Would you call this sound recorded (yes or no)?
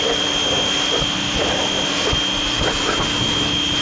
yes